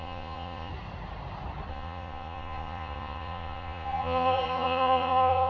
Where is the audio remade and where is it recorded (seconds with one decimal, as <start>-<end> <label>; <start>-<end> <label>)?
0.0-0.7 remade; 0.7-1.7 recorded; 1.7-5.5 remade